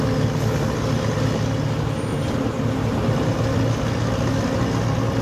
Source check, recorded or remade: recorded